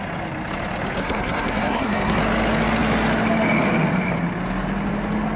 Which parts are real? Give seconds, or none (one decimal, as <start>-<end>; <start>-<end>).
0.0-1.0; 2.2-5.4